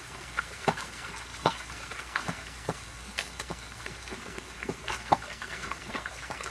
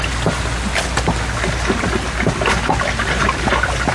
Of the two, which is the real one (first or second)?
second